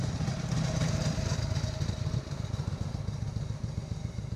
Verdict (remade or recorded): recorded